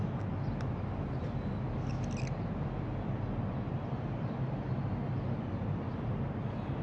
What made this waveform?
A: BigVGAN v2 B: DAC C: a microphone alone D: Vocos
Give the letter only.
C